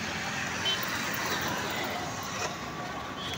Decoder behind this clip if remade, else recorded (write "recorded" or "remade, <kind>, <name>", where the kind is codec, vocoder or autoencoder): recorded